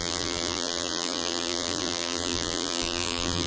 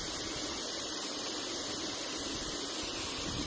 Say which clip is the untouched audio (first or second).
second